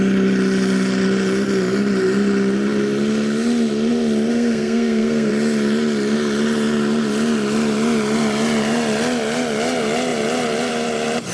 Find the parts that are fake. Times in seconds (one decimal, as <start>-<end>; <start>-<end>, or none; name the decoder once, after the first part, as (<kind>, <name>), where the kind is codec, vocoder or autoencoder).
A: 4.3-5.3 (codec, SNAC)